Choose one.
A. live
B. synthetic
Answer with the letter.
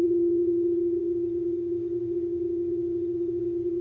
B